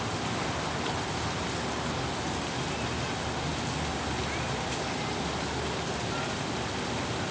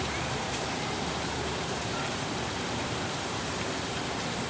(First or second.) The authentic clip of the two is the first